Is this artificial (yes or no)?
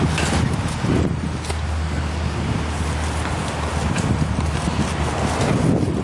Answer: no